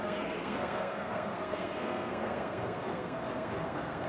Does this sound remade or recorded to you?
remade